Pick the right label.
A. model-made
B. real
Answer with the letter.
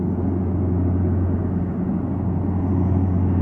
B